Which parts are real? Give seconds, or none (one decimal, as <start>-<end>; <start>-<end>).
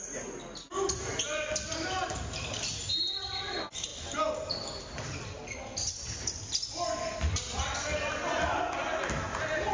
0.0-9.7